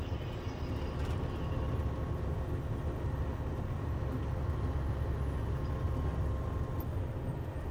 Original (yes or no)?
yes